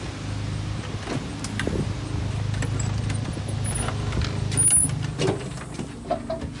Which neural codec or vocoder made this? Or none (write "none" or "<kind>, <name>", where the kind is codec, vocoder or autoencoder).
none